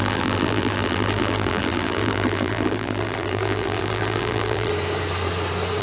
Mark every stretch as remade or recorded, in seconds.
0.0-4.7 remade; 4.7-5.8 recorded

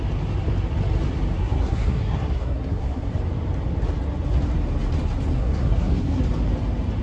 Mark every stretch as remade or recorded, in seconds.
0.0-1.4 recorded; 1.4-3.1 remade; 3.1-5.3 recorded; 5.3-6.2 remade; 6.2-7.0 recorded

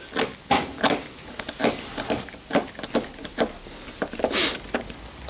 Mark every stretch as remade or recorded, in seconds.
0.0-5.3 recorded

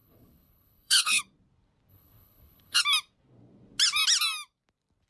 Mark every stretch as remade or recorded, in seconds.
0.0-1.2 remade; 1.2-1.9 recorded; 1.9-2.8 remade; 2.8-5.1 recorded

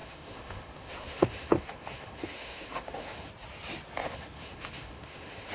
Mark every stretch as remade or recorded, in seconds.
0.0-3.3 remade; 3.3-4.0 recorded; 4.0-5.5 remade